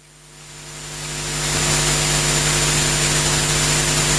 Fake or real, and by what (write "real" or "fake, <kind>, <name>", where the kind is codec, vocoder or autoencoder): real